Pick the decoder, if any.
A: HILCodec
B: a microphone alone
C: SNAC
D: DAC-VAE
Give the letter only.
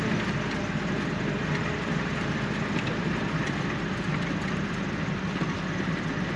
B